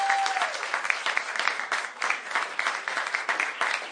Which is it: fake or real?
real